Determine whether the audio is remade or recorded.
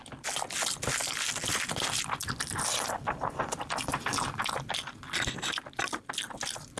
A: recorded